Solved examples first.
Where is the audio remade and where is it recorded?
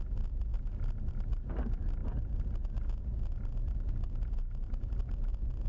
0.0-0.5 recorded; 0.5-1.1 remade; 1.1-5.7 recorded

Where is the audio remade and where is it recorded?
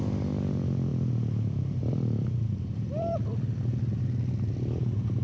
0.0-0.9 recorded; 0.9-4.0 remade; 4.0-5.2 recorded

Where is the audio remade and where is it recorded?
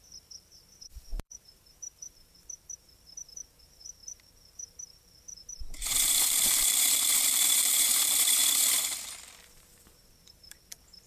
0.0-8.4 remade; 8.4-9.5 recorded; 9.5-11.1 remade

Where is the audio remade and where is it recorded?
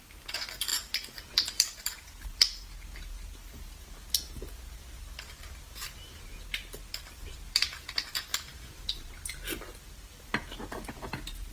0.0-4.8 recorded; 4.8-6.2 remade; 6.2-8.5 recorded; 8.5-9.1 remade; 9.1-11.5 recorded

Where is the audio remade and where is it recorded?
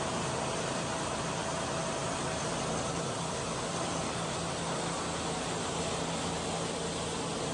0.0-2.0 recorded; 2.0-4.3 remade; 4.3-7.5 recorded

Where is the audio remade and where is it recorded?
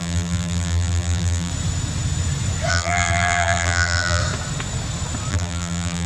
0.0-1.5 remade; 1.5-2.7 recorded; 2.7-4.2 remade; 4.2-5.3 recorded; 5.3-6.1 remade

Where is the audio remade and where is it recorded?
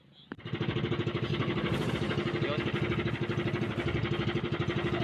0.0-1.3 recorded; 1.3-1.9 remade; 1.9-5.0 recorded